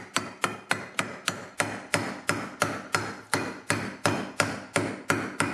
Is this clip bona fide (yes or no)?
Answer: yes